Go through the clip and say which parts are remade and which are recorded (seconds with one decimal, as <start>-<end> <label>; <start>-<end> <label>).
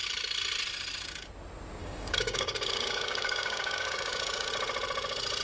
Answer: 0.0-1.8 recorded; 1.8-4.5 remade; 4.5-5.4 recorded